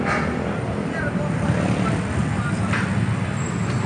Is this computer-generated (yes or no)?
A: no